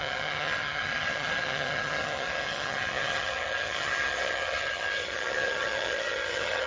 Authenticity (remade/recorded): remade